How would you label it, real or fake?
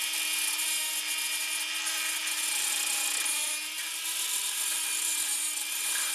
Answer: real